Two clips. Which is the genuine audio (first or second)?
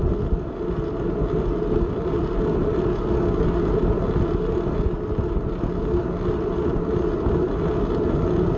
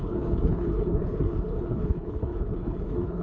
first